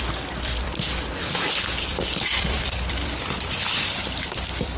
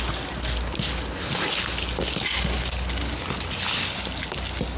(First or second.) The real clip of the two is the second